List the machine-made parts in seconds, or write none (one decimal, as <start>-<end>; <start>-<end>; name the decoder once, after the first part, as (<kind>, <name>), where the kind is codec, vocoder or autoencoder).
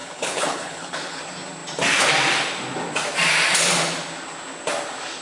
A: 0.0-1.2 (codec, HILCodec)